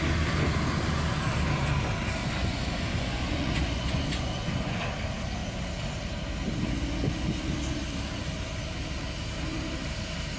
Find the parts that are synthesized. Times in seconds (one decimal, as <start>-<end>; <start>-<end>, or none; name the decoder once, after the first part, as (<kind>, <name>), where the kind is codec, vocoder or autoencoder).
2.2-4.8 (vocoder, Vocos)